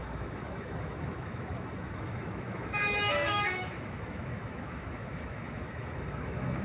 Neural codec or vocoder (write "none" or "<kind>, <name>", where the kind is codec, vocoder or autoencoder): autoencoder, DAC-VAE